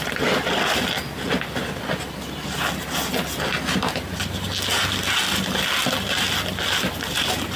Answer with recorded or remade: recorded